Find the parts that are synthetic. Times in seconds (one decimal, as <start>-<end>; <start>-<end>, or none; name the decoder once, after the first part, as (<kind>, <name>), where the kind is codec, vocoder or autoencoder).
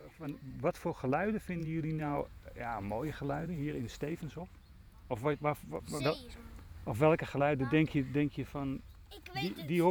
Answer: 0.0-1.1 (vocoder, Vocos); 1.6-6.0